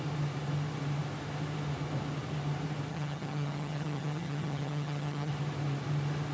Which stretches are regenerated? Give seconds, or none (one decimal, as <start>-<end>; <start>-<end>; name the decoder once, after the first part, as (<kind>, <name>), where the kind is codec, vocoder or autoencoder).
2.9-5.3 (vocoder, HiFi-GAN)